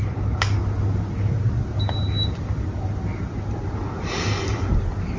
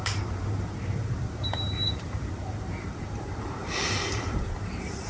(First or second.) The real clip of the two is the first